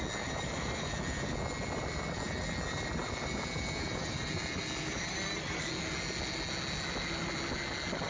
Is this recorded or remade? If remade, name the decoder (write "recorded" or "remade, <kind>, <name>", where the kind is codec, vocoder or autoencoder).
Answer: recorded